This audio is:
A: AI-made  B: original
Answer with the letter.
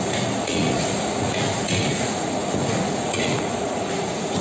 A